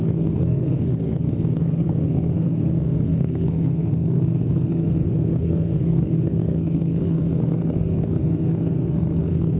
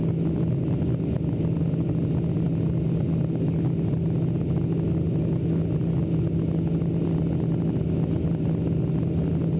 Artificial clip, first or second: first